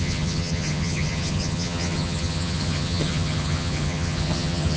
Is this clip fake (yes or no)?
yes